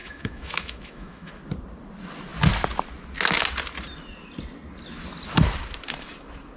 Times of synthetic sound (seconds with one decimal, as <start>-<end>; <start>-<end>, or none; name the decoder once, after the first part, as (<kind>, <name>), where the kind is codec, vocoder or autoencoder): 0.0-1.3 (autoencoder, DAC-VAE)